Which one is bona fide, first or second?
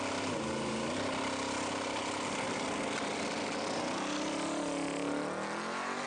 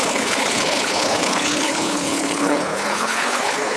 first